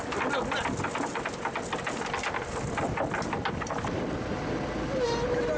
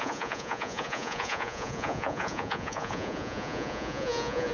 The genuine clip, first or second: first